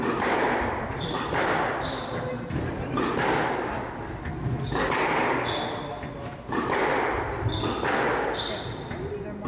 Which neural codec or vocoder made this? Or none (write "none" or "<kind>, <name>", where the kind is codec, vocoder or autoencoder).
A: none